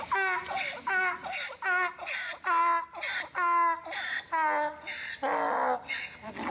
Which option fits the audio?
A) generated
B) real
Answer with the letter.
B